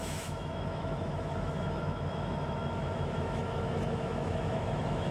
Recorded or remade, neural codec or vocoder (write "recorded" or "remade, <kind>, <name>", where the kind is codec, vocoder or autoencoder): remade, autoencoder, DAC-VAE